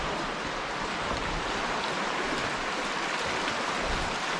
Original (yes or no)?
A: yes